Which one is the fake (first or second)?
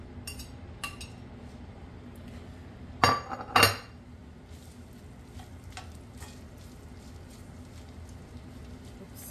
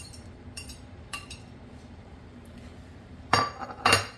second